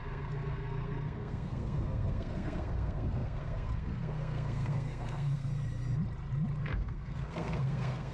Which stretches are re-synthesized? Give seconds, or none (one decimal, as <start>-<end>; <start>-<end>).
0.0-5.5; 6.6-8.1